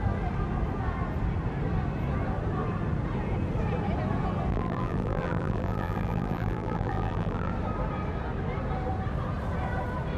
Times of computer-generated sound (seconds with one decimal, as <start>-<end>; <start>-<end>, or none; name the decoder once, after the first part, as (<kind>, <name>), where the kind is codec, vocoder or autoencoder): 4.5-7.5 (vocoder, BigVGAN v2)